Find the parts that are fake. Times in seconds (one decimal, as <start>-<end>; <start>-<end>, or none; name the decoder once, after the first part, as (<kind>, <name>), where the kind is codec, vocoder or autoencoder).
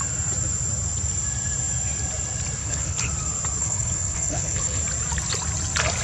2.6-3.1 (codec, HILCodec); 3.6-4.8